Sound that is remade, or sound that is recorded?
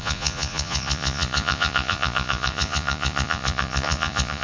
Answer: remade